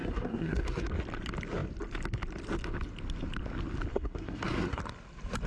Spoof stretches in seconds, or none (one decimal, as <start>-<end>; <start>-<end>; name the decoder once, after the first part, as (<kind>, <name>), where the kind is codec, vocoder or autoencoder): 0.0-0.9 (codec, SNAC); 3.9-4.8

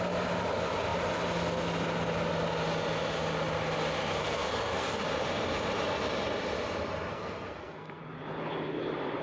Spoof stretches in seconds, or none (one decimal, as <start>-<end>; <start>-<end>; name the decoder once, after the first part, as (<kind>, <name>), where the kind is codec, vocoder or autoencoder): 4.2-5.0 (codec, SNAC); 7.1-8.0

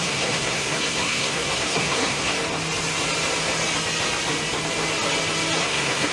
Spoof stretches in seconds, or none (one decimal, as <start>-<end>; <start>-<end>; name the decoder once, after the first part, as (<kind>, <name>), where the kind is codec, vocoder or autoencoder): 0.0-2.3 (codec, SNAC); 5.6-6.1

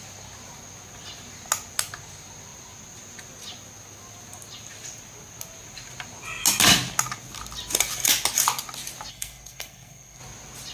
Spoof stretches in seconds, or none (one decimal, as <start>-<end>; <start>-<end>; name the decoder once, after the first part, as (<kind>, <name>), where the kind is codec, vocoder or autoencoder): 9.1-10.2 (codec, SNAC)

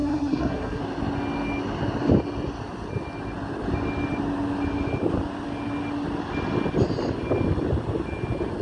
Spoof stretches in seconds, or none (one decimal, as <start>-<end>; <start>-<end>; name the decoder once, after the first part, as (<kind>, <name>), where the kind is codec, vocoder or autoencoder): 0.0-0.8 (codec, SNAC)

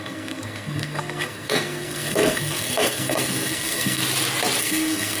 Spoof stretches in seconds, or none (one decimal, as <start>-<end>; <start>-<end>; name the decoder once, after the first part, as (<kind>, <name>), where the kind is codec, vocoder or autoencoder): 0.0-4.0 (codec, SNAC); 4.6-5.2

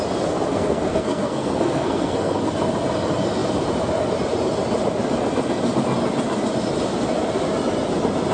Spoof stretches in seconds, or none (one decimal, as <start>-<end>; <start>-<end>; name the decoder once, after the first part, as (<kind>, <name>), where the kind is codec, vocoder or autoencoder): 0.5-2.4 (codec, SNAC)